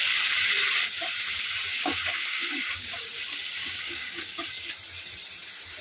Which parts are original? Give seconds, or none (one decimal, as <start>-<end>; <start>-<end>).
0.0-1.7; 3.0-3.6; 4.4-5.8